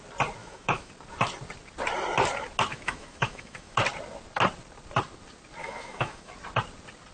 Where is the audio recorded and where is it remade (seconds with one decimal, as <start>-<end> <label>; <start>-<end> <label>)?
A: 0.0-0.4 recorded; 0.4-0.9 remade; 0.9-2.7 recorded; 2.7-3.8 remade; 3.8-5.6 recorded; 5.6-6.3 remade; 6.3-7.1 recorded